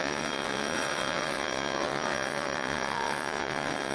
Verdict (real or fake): fake